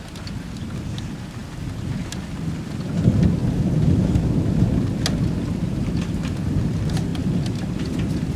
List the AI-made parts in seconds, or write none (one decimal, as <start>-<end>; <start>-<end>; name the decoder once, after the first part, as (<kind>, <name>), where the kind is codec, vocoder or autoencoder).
1.4-2.0 (vocoder, BigVGAN v2); 3.4-4.1; 7.1-7.8